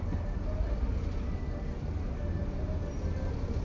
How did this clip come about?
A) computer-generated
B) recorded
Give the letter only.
B